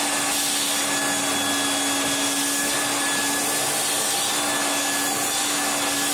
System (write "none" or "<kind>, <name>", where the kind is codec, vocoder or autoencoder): none